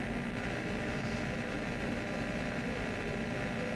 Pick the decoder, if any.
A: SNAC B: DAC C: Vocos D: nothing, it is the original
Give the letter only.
D